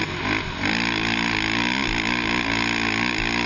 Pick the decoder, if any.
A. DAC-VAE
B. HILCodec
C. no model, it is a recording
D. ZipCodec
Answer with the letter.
C